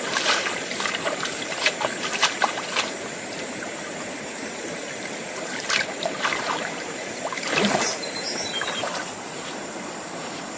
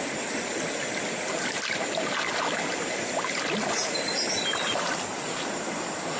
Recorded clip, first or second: second